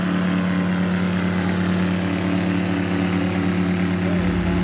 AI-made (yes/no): no